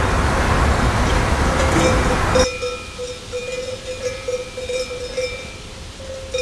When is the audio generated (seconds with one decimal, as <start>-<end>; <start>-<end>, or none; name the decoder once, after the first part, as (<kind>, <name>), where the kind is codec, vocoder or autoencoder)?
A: none